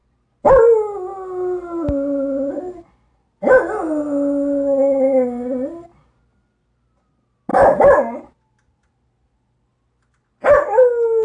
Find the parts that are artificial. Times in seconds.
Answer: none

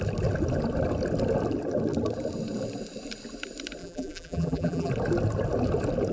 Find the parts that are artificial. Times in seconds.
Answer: 3.8-4.9 (vocoder, BigVGAN v2)

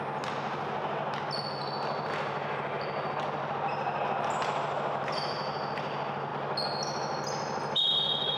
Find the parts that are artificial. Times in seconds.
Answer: none

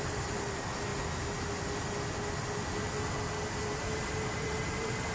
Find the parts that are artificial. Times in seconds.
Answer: 0.0-0.9 (vocoder, BigVGAN v2); 3.6-5.1

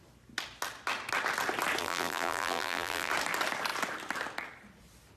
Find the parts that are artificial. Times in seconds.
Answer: 1.8-3.1 (vocoder, BigVGAN v2)

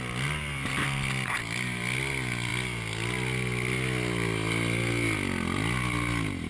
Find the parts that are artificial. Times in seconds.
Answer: none

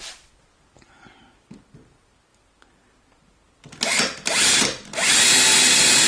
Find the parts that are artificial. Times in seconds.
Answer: none

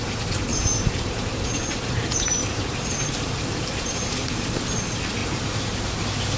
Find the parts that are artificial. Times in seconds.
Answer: 0.0-1.8 (vocoder, BigVGAN v2); 2.4-4.6; 5.2-6.0